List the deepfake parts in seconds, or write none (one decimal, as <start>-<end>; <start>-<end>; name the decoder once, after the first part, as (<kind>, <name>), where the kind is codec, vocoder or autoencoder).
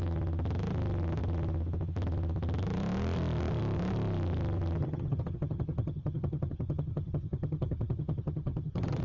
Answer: 4.8-9.0 (vocoder, HiFi-GAN)